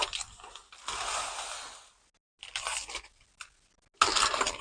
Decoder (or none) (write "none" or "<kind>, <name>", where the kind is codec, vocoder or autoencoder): none